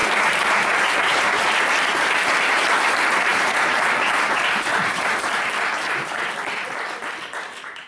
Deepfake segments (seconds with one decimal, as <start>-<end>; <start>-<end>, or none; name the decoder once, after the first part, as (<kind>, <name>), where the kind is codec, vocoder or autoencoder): 0.0-1.6 (vocoder, BigVGAN v2); 3.3-6.2